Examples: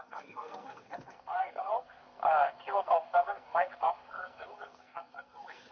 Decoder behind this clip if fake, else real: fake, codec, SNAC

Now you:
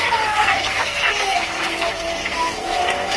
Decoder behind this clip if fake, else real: fake, codec, SNAC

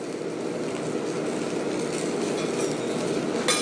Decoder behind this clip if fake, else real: real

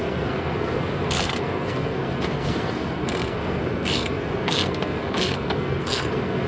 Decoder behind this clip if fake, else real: fake, codec, SNAC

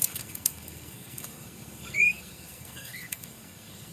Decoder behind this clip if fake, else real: fake, codec, SNAC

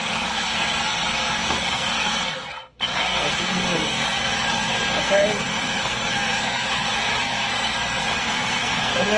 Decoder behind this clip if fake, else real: fake, codec, SNAC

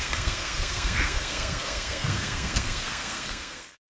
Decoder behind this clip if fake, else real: fake, codec, SNAC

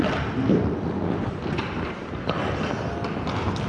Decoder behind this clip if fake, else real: real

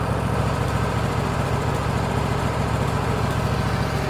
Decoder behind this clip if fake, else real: real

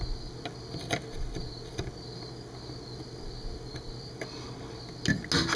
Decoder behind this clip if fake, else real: real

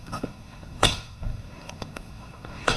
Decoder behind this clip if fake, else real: fake, codec, SNAC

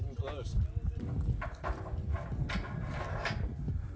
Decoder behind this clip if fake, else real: real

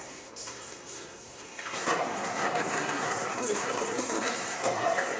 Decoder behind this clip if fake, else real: fake, codec, SNAC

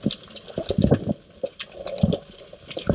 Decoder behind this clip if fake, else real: real